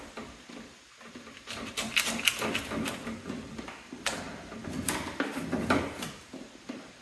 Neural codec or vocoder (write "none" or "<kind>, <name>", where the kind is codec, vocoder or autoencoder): none